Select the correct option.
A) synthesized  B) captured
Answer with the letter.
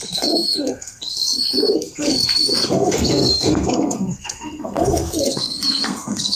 A